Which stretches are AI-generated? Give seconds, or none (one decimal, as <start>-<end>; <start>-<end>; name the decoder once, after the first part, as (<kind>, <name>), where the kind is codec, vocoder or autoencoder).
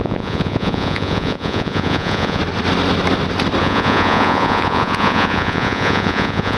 0.0-2.4 (vocoder, Vocos); 3.6-6.6